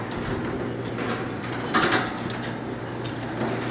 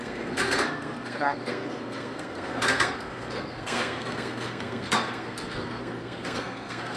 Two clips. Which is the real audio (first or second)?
first